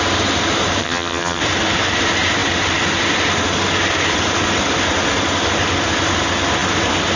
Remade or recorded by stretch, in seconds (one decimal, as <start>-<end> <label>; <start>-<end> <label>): 0.0-0.8 recorded; 0.8-1.4 remade; 1.4-7.2 recorded